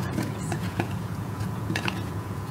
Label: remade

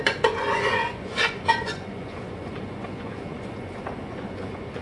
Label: remade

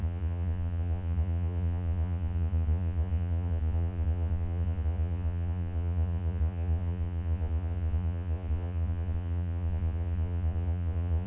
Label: remade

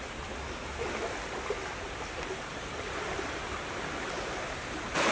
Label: recorded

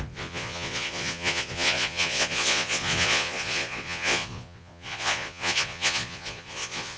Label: remade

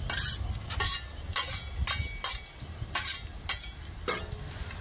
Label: recorded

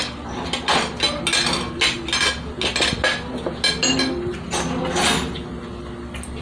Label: recorded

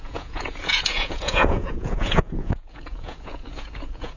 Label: remade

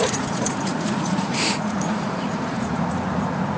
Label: remade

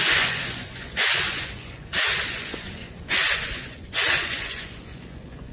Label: remade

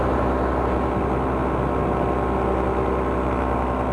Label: recorded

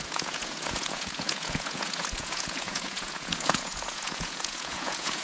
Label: remade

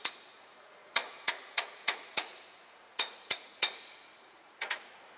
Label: remade